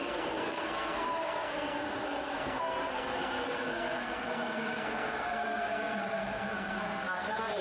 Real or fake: fake